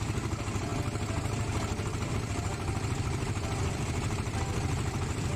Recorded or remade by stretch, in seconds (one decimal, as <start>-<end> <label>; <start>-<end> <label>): 0.0-0.7 remade; 0.7-2.1 recorded; 2.1-5.4 remade